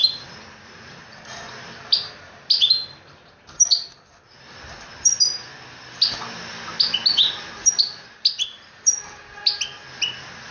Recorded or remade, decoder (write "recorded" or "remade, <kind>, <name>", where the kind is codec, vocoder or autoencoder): recorded